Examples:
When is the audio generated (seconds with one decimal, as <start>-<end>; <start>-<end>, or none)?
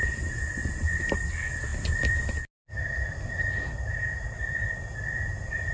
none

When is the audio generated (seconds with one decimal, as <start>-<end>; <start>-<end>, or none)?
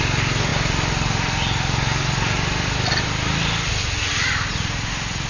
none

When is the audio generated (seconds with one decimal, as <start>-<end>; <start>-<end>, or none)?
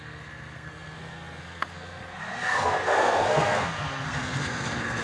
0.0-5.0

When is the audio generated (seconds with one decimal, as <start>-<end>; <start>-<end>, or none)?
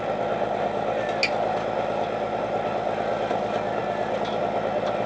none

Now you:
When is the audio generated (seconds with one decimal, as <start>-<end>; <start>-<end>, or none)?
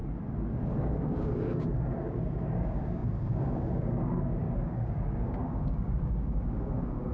0.8-7.1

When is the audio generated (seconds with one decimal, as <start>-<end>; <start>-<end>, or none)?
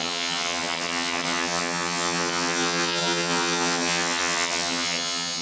0.0-5.4